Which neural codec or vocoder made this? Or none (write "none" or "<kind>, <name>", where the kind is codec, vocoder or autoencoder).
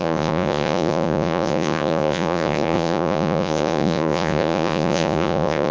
vocoder, Vocos